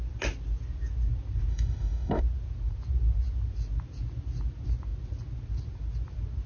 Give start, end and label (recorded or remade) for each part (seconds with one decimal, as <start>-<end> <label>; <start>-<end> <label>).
0.0-1.5 recorded; 1.5-2.2 remade; 2.2-6.5 recorded